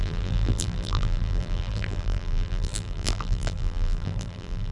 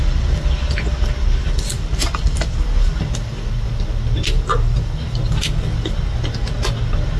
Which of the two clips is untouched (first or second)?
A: second